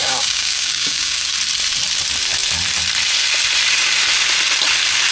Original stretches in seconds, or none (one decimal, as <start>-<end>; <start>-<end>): 1.3-5.1